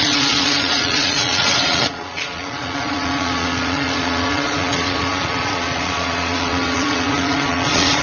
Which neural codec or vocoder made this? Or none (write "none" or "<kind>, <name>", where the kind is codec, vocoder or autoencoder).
vocoder, Vocos